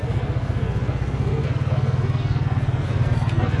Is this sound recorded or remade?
remade